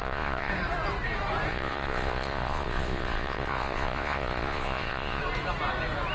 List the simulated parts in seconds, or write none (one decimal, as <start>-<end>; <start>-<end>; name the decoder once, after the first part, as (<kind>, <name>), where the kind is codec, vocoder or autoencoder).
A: 0.0-0.5 (vocoder, Vocos); 1.5-5.2